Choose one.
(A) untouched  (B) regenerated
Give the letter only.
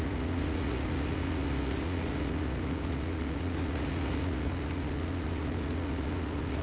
B